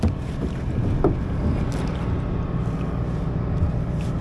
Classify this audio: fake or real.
real